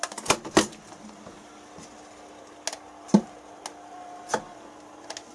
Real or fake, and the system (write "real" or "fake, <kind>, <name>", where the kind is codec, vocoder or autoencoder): real